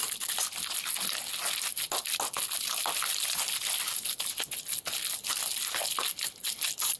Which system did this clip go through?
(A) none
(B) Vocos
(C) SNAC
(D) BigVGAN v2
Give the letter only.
A